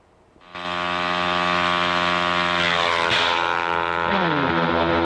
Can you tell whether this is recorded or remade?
recorded